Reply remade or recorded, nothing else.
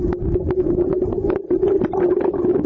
recorded